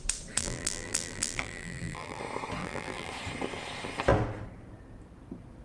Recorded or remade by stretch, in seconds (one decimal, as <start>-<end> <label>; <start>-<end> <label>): 0.0-0.4 recorded; 0.4-2.2 remade; 2.2-2.6 recorded; 2.6-3.1 remade; 3.1-5.6 recorded